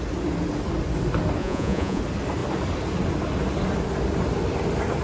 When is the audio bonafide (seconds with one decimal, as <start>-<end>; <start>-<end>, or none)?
0.0-1.4; 2.0-5.0